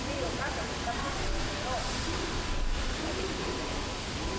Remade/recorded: recorded